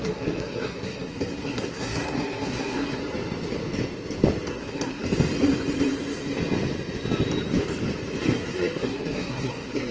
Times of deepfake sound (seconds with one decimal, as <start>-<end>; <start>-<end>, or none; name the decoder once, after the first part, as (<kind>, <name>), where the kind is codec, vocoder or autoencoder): 0.0-3.0 (codec, SNAC); 4.5-5.0; 8.2-9.9